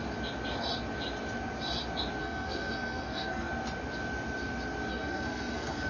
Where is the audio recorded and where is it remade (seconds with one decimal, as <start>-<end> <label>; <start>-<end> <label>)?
0.0-2.2 recorded; 2.2-3.5 remade; 3.5-4.9 recorded; 4.9-5.9 remade